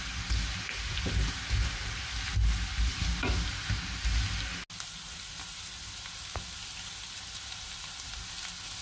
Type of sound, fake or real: real